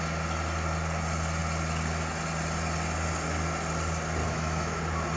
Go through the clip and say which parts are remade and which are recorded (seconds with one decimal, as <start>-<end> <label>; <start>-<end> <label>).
0.0-4.2 recorded; 4.2-4.8 remade; 4.8-5.2 recorded